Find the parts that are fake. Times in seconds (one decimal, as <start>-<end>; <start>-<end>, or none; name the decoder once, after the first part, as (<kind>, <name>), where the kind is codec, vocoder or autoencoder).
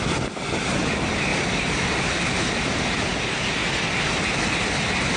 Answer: 1.3-2.2 (vocoder, BigVGAN v2); 3.6-4.2